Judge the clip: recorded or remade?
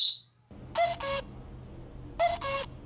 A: recorded